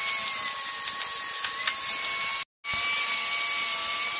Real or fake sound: real